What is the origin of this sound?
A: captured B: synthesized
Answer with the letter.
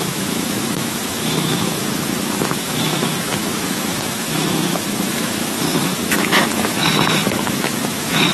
B